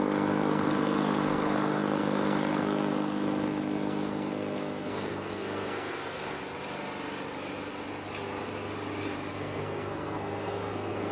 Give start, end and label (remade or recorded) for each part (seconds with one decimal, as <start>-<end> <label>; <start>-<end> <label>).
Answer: 0.0-6.4 remade; 6.4-9.3 recorded; 9.3-11.1 remade